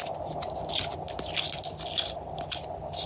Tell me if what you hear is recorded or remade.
recorded